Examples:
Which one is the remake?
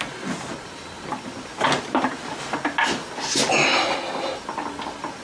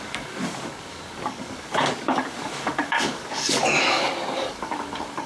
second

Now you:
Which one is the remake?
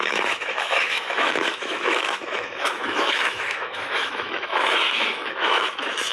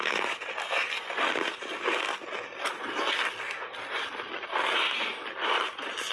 first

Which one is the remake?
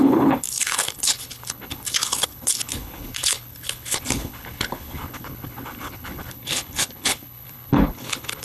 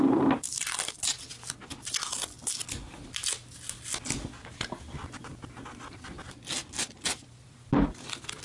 first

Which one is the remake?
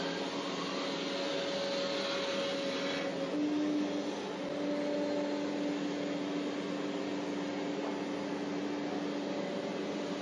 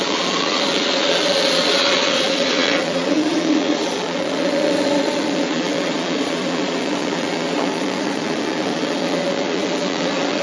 second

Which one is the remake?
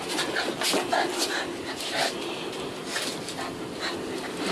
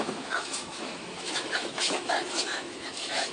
second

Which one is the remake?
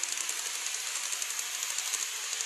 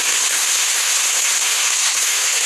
second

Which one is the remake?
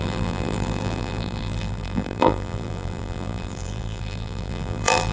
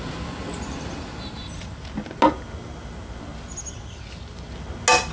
first